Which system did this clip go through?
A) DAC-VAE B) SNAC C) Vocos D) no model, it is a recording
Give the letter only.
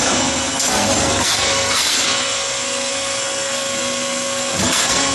B